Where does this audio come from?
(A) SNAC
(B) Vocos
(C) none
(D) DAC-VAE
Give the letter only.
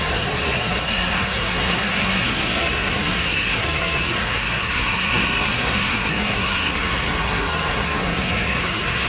A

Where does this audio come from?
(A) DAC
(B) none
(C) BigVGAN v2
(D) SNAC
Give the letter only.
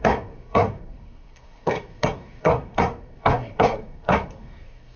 D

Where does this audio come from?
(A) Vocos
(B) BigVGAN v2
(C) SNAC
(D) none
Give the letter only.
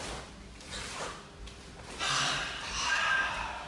D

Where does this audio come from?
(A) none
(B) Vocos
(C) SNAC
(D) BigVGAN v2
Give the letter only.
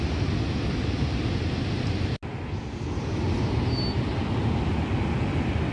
A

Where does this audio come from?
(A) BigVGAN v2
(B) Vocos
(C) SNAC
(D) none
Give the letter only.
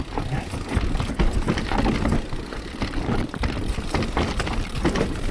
D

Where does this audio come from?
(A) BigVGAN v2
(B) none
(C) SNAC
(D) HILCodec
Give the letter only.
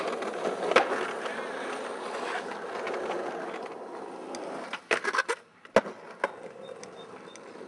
B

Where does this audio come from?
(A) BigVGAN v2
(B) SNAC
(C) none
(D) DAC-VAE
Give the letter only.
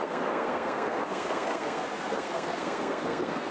B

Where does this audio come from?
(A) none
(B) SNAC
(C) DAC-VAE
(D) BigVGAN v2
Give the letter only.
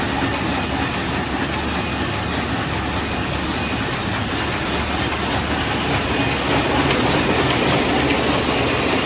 A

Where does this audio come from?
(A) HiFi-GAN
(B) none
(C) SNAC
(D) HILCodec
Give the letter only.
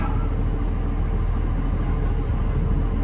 B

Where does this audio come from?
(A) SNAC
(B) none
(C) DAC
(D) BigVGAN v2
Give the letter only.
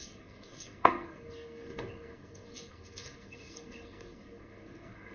A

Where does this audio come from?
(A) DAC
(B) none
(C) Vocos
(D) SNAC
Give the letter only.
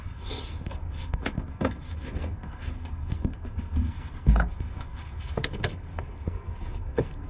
D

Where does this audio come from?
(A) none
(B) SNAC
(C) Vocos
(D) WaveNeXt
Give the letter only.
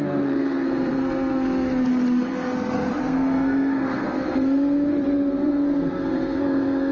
B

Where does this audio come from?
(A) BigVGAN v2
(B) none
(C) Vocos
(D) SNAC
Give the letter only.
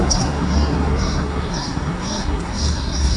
D